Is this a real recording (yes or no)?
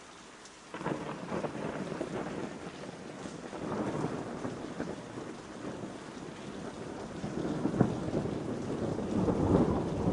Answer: yes